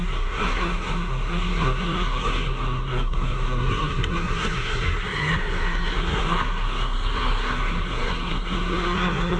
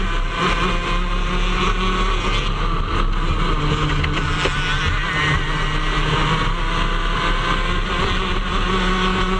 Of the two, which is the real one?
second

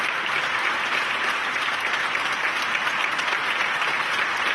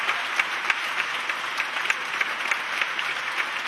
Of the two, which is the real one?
first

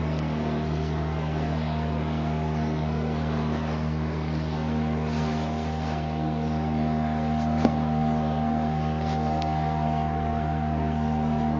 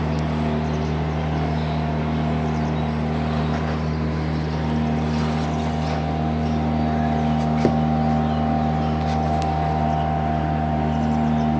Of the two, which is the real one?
second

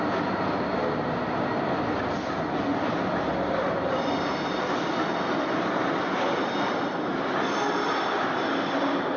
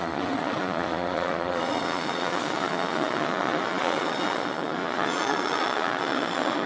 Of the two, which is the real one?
first